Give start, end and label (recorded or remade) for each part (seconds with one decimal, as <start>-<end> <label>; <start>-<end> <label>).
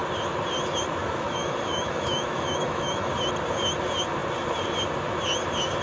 0.0-1.0 recorded; 1.0-3.1 remade; 3.1-5.8 recorded